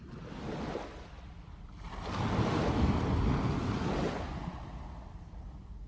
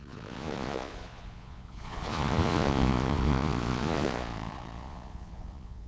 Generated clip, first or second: second